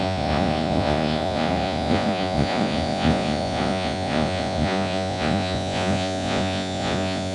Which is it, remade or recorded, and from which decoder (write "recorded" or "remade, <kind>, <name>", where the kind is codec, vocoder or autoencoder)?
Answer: remade, vocoder, Vocos